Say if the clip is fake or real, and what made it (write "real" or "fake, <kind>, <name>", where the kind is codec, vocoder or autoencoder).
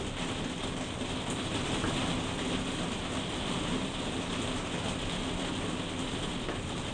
real